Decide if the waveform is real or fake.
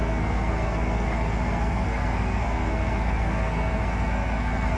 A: fake